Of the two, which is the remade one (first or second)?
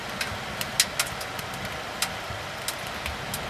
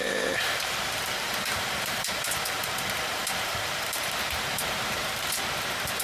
second